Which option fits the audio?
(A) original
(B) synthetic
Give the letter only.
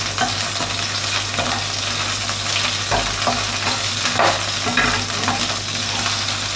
A